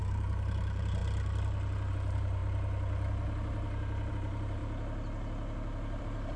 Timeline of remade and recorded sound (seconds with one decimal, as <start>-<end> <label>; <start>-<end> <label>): 0.0-1.0 remade; 1.0-1.9 recorded; 1.9-2.4 remade; 2.4-4.1 recorded; 4.1-4.6 remade; 4.6-6.0 recorded; 6.0-6.4 remade